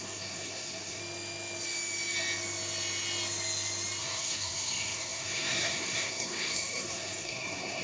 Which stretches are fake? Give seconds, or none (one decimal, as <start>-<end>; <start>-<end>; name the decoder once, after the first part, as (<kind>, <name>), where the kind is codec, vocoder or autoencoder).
0.0-1.0 (codec, SNAC); 4.0-7.8